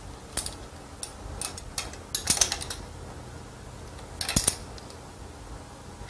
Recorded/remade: recorded